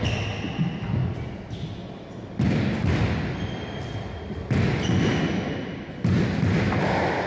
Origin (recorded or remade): recorded